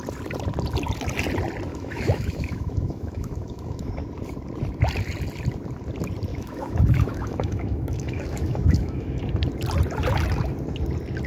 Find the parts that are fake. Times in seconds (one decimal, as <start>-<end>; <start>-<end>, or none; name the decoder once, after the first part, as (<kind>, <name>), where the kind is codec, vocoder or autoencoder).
1.7-3.9 (autoencoder, DAC-VAE); 6.3-9.2